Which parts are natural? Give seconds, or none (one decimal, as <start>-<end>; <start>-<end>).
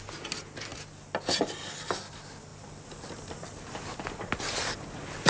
0.0-5.3